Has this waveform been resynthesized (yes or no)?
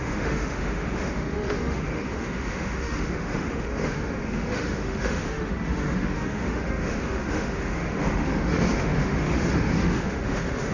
yes